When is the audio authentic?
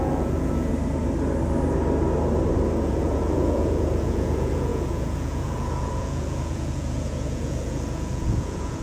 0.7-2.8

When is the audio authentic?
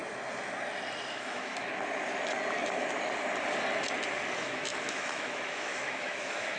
0.0-1.1; 1.7-4.4